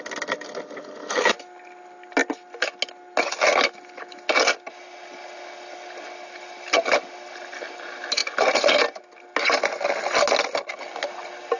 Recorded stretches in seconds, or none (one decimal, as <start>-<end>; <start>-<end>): 0.0-11.6